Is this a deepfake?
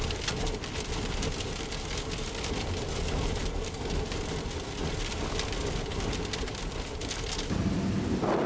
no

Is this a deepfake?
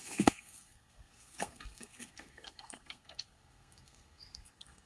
yes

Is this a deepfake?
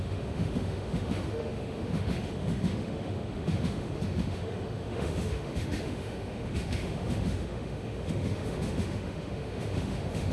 yes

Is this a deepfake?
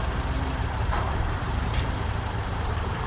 yes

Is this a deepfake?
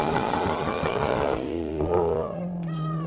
yes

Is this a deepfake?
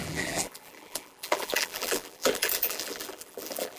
yes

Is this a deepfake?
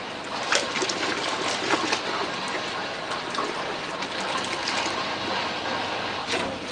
no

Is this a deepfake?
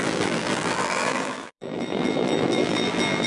yes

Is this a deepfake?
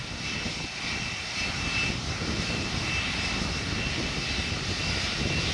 no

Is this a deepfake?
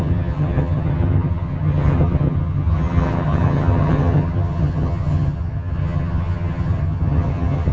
yes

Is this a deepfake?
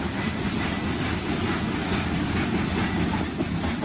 no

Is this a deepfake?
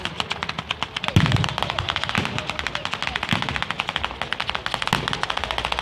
no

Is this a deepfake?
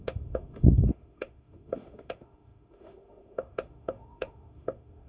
yes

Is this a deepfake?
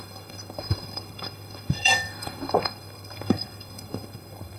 yes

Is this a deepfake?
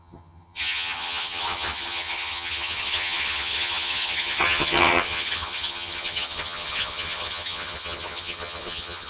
yes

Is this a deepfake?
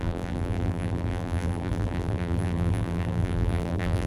yes